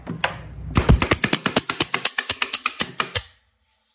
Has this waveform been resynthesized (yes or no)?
no